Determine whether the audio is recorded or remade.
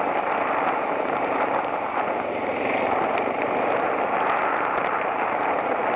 recorded